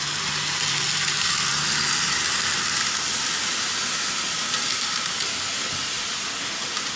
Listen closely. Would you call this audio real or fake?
real